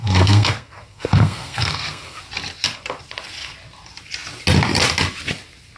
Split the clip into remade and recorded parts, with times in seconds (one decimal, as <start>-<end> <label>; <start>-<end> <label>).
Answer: 0.0-2.2 remade; 2.2-5.8 recorded